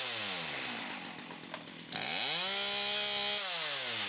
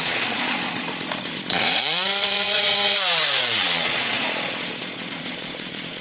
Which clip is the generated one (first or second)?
second